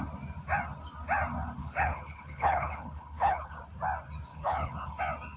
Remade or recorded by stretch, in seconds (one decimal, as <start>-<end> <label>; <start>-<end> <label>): 0.0-1.6 recorded; 1.6-3.6 remade; 3.6-4.3 recorded; 4.3-5.0 remade; 5.0-5.4 recorded